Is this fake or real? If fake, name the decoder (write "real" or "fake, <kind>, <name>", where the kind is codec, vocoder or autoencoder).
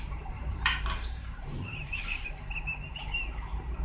fake, vocoder, BigVGAN v2